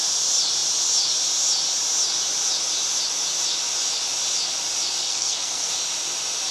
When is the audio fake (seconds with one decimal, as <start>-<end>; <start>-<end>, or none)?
5.0-5.7